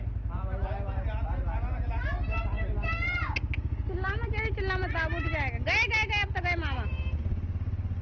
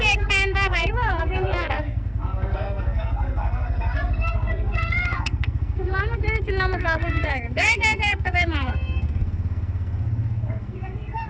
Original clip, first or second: first